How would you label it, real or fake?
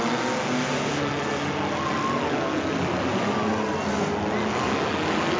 real